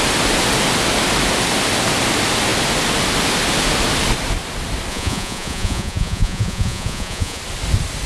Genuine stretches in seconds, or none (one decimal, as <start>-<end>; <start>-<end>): 0.0-4.9; 7.4-8.1